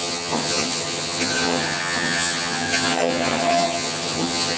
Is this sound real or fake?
fake